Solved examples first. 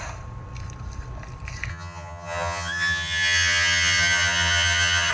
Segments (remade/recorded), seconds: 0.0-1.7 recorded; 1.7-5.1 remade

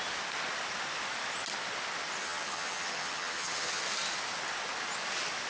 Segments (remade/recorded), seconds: 0.0-2.2 recorded; 2.2-3.8 remade; 3.8-5.5 recorded

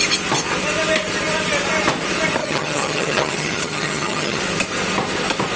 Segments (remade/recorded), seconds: 0.0-2.4 recorded; 2.4-4.4 remade; 4.4-5.6 recorded

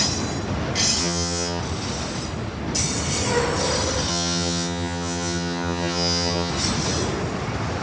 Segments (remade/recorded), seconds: 0.0-1.0 recorded; 1.0-1.6 remade; 1.6-4.1 recorded; 4.1-6.5 remade; 6.5-7.8 recorded

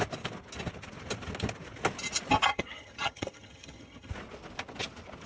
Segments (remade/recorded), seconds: 0.0-2.5 recorded; 2.5-4.1 remade; 4.1-5.3 recorded